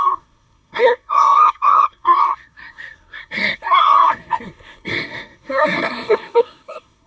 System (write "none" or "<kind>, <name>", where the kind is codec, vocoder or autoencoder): codec, SNAC